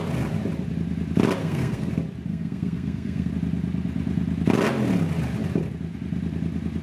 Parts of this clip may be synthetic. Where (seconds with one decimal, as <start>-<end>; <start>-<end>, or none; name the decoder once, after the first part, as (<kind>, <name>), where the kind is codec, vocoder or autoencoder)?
1.4-1.9 (codec, SNAC); 2.3-3.3